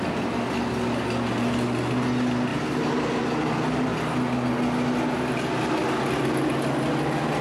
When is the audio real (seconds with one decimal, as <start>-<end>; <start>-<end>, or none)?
0.0-2.5; 3.1-7.4